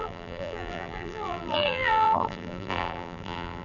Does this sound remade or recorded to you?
remade